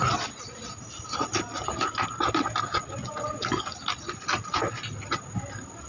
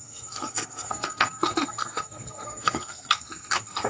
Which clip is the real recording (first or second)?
first